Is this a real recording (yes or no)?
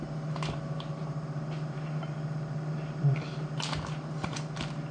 yes